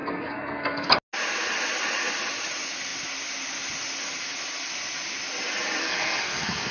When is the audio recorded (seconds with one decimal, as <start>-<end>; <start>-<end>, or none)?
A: 0.9-5.8